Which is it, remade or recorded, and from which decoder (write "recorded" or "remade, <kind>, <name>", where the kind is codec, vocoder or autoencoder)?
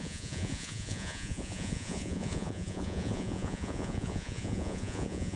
remade, vocoder, Vocos